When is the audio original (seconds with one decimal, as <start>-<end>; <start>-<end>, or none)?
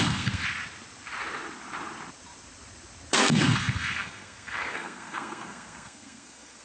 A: 0.4-3.1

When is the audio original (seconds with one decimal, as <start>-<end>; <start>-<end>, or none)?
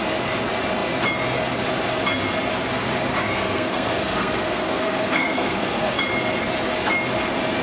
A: 0.0-3.1; 6.0-7.6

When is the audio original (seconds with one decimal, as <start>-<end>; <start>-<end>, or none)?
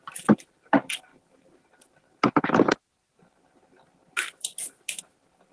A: 0.0-5.5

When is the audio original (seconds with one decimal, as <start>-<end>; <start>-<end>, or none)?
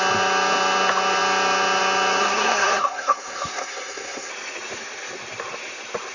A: 0.0-2.2; 4.3-6.1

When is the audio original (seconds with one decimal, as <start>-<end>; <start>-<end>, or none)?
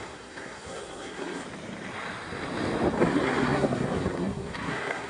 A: 1.4-3.0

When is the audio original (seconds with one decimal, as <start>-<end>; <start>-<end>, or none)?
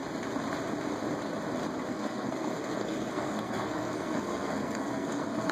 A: 0.0-1.9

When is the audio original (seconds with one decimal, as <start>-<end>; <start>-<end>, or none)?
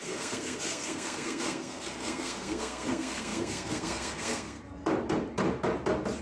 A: 4.6-6.2